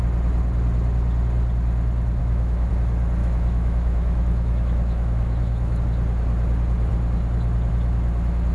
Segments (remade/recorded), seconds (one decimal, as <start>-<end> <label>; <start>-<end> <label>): 0.0-2.2 recorded; 2.2-2.7 remade; 2.7-3.2 recorded; 3.2-5.8 remade; 5.8-8.5 recorded